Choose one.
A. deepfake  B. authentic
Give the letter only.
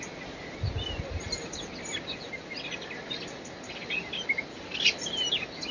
B